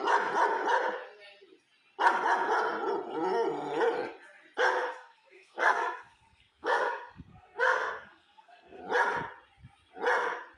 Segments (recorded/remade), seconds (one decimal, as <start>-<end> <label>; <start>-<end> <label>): 0.0-4.9 recorded; 4.9-8.8 remade; 8.8-10.6 recorded